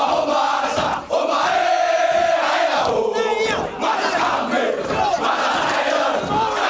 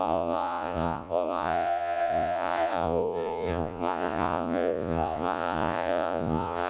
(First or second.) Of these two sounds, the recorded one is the first